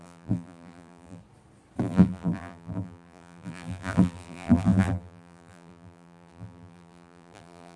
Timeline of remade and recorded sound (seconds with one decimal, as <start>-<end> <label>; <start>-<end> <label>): 0.0-1.2 remade; 1.2-1.8 recorded; 1.8-7.8 remade